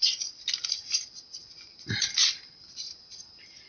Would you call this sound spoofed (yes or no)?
no